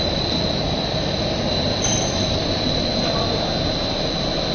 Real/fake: fake